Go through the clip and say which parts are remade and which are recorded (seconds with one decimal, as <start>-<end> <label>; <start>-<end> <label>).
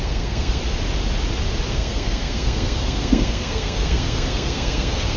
0.0-0.6 remade; 0.6-1.7 recorded; 1.7-5.2 remade